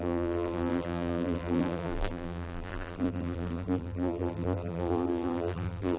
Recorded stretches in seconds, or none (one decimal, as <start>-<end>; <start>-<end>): none